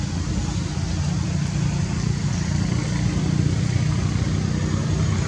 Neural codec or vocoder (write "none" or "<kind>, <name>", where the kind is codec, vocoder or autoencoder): none